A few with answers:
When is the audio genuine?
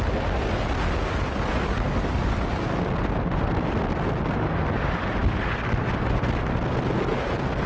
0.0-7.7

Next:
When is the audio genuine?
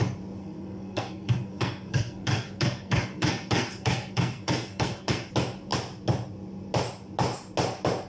0.0-0.4; 5.3-8.1